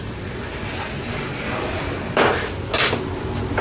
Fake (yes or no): no